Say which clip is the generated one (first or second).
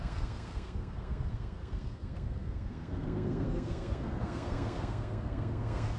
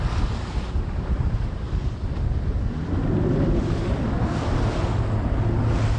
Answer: first